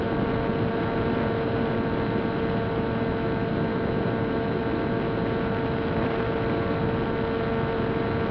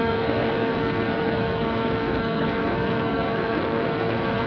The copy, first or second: second